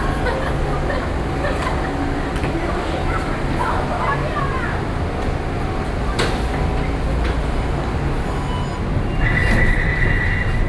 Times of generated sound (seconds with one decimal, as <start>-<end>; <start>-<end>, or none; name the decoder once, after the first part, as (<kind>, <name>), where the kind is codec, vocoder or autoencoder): none